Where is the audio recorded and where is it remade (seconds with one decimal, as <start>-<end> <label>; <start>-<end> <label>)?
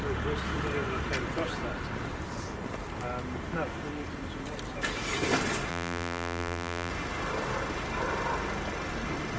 0.0-5.7 recorded; 5.7-6.9 remade; 6.9-9.4 recorded